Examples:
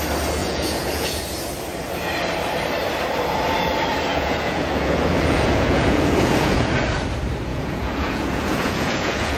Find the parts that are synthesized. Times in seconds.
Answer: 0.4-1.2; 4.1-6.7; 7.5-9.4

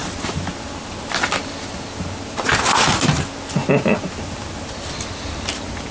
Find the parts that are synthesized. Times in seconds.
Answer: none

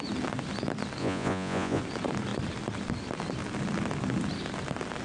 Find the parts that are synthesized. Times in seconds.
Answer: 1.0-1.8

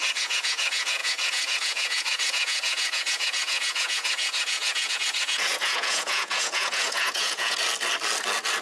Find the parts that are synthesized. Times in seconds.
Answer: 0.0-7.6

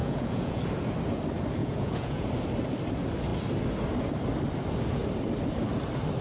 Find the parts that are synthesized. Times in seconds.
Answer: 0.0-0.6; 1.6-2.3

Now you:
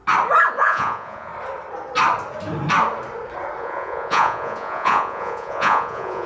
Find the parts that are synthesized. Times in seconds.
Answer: 0.5-1.3; 3.6-6.3

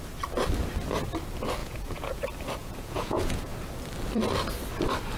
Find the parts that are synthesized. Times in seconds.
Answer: 1.6-2.2; 2.6-3.5

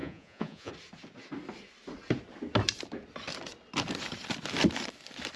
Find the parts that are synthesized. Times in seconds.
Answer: 0.0-0.7